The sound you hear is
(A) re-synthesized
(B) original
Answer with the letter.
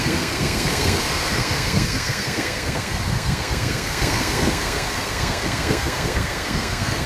A